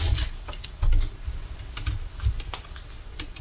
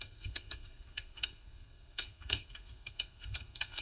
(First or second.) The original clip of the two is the first